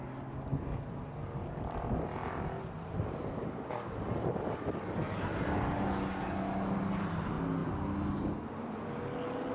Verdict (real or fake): real